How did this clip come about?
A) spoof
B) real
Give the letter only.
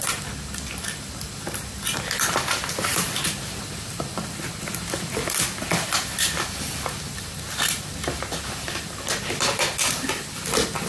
B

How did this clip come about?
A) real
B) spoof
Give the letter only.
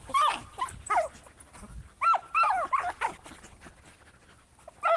A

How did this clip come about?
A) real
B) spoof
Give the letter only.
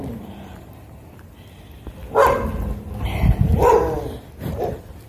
A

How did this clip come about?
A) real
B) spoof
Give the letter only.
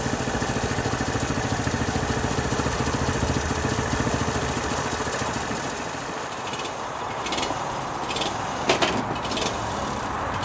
A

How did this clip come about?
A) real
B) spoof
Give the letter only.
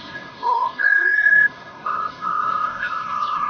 B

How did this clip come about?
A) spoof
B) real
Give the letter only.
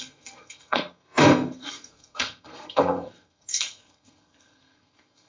A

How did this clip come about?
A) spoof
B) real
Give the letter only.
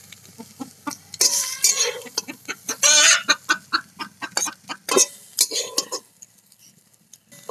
B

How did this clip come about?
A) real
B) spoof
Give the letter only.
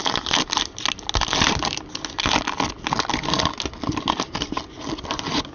A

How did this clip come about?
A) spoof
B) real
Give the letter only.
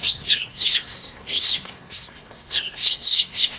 A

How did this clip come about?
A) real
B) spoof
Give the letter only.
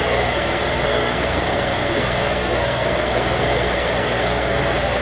B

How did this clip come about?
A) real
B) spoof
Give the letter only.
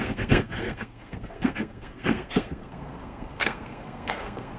B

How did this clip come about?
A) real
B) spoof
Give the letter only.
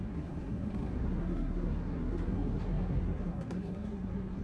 B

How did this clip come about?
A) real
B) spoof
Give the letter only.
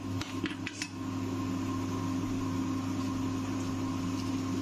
A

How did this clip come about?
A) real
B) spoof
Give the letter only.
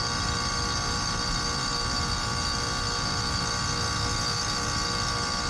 A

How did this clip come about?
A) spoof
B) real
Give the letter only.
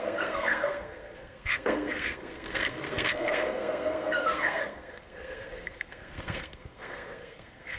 A